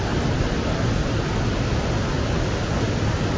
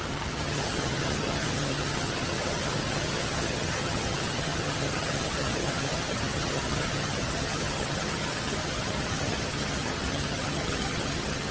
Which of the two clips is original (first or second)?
first